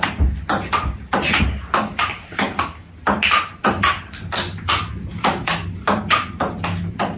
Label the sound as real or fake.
real